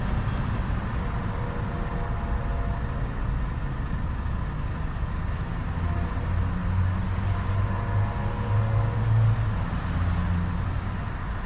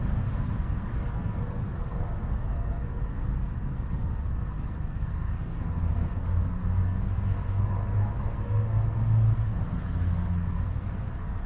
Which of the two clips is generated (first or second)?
second